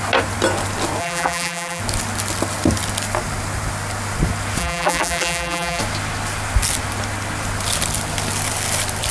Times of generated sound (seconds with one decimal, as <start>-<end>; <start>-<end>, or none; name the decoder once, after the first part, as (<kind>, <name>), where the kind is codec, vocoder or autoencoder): 1.0-1.8 (vocoder, BigVGAN v2); 4.6-5.8